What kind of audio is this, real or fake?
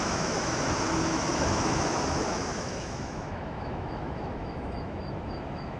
fake